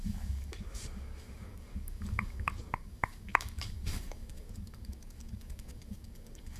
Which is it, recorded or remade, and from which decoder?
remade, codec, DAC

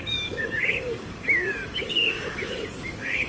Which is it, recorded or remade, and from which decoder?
remade, codec, DAC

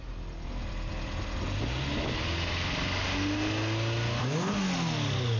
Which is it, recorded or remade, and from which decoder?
recorded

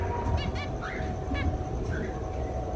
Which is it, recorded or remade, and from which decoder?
recorded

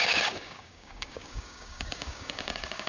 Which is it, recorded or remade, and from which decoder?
remade, codec, DAC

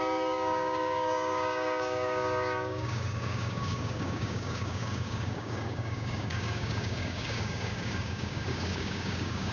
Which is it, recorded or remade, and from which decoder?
remade, codec, DAC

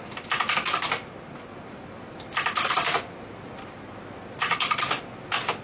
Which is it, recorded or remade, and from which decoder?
recorded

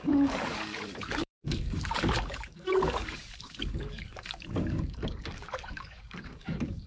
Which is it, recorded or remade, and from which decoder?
remade, codec, DAC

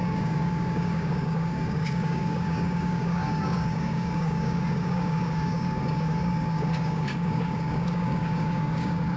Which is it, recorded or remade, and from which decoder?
remade, codec, DAC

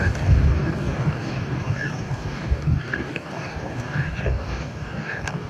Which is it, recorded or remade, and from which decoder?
remade, codec, DAC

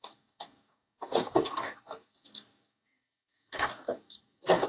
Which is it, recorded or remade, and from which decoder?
remade, codec, DAC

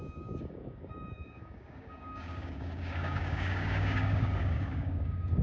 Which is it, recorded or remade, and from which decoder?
remade, codec, DAC